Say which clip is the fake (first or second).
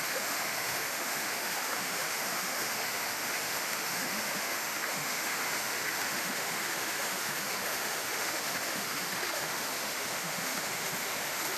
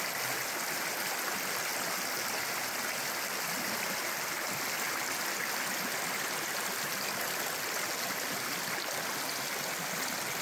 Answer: first